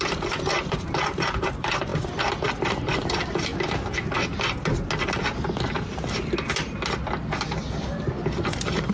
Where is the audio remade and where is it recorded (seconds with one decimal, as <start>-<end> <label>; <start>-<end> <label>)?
0.0-1.9 remade; 1.9-2.5 recorded; 2.5-3.5 remade; 3.5-8.4 recorded; 8.4-8.9 remade